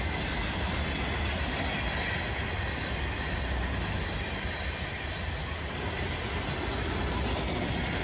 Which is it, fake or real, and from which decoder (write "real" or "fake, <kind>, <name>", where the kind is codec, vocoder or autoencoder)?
real